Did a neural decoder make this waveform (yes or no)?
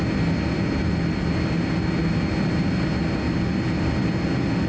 no